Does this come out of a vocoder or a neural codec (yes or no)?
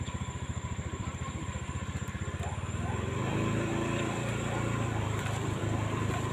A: yes